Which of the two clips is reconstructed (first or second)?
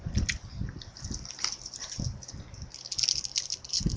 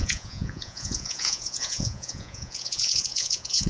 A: second